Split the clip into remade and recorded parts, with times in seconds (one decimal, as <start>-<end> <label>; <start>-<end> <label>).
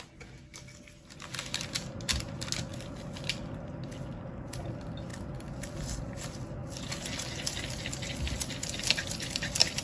0.0-9.8 recorded